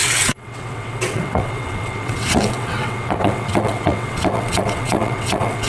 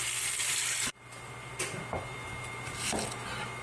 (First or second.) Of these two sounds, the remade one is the first